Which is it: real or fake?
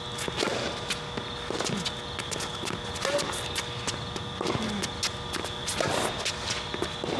real